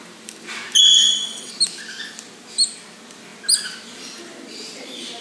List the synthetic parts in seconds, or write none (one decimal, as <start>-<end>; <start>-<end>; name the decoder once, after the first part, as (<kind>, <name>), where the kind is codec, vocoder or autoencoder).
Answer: 0.8-1.5 (vocoder, WaveNeXt)